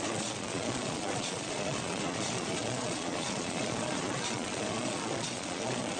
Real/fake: fake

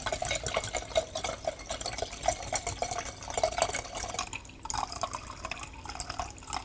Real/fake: real